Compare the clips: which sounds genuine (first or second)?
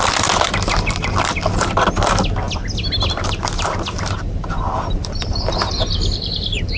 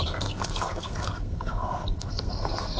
first